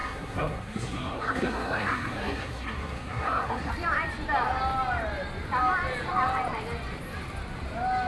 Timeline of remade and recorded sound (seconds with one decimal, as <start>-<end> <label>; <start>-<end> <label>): 0.0-3.7 remade; 3.7-8.1 recorded